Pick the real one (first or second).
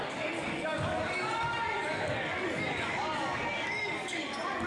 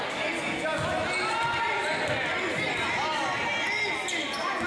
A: second